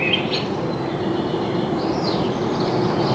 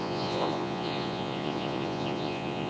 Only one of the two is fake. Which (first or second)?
second